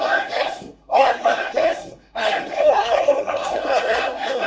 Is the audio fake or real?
fake